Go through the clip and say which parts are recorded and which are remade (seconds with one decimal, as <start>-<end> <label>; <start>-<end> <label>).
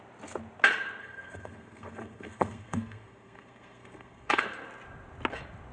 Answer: 0.0-1.0 recorded; 1.0-4.4 remade; 4.4-5.7 recorded